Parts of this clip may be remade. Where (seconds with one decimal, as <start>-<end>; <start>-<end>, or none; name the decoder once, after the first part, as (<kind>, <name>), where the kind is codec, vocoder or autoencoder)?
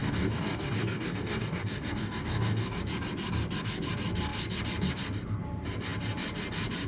0.0-2.8 (codec, DAC)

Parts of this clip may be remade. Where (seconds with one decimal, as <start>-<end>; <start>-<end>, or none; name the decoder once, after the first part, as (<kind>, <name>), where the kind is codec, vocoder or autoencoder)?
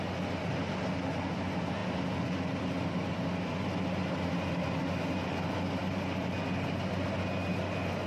none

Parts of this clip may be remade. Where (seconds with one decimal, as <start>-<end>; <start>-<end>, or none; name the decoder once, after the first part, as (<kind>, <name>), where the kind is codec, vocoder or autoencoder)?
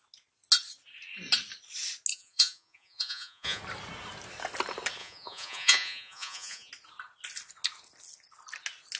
2.1-3.6 (vocoder, Vocos); 5.0-6.7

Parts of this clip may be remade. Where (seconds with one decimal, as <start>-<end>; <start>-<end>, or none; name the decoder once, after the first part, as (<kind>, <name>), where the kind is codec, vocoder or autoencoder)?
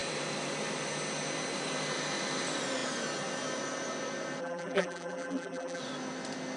4.4-5.8 (vocoder, BigVGAN v2)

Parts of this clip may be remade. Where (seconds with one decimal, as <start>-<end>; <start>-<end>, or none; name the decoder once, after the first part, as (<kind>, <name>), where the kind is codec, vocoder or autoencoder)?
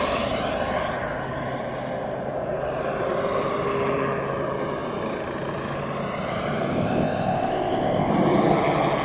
6.7-8.1 (codec, ZipCodec)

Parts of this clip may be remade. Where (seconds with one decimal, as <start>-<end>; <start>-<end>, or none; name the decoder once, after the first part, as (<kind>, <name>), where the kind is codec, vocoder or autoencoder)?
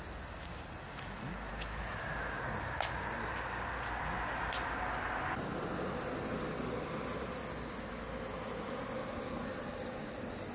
none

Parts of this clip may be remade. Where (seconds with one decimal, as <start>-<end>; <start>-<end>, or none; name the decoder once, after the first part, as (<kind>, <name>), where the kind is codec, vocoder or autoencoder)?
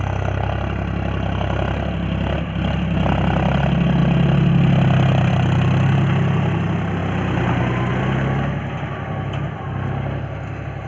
none